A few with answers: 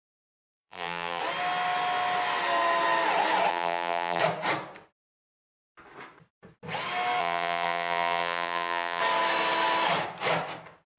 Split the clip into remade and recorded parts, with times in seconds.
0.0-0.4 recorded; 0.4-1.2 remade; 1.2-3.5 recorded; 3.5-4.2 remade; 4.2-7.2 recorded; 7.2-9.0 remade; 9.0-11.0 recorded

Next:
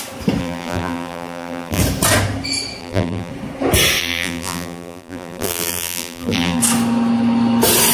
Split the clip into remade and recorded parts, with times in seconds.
0.0-0.4 recorded; 0.4-1.8 remade; 1.8-2.8 recorded; 2.8-3.3 remade; 3.3-4.0 recorded; 4.0-6.6 remade; 6.6-7.9 recorded

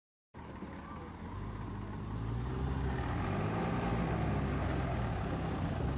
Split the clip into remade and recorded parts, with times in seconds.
0.0-1.7 remade; 1.7-6.0 recorded

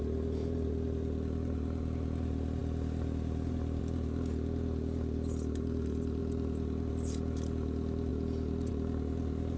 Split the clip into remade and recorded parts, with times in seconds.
0.0-9.6 recorded

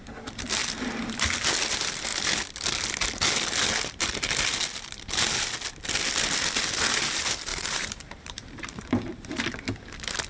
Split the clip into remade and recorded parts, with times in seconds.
0.0-7.5 recorded; 7.5-9.4 remade; 9.4-10.3 recorded